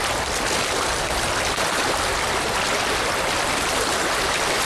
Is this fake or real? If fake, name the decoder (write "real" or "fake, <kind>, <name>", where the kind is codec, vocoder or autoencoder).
real